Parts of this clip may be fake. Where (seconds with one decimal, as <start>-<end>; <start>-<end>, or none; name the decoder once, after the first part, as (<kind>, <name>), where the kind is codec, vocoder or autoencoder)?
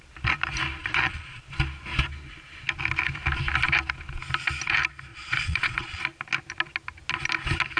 0.8-1.4 (vocoder, Vocos); 5.1-6.0